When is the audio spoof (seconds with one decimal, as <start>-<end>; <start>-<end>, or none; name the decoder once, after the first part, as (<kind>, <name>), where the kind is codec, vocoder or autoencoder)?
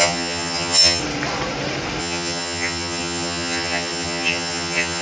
0.0-1.0 (vocoder, HiFi-GAN); 2.0-5.0